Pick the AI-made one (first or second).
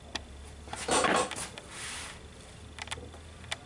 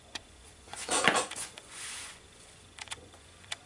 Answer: second